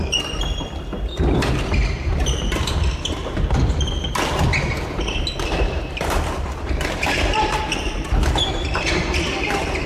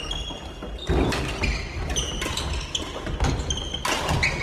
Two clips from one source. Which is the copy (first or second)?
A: first